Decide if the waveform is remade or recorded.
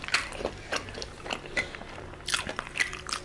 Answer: recorded